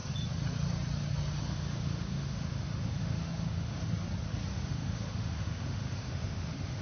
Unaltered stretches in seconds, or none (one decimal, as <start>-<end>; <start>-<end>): 0.0-1.4; 3.8-4.5